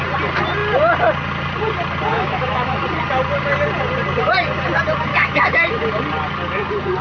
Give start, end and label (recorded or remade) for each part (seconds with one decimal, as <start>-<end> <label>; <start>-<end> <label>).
0.0-2.1 recorded; 2.1-2.8 remade; 2.8-5.1 recorded; 5.1-5.8 remade; 5.8-7.0 recorded